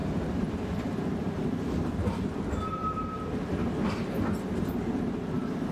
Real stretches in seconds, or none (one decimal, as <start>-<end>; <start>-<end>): 0.0-5.7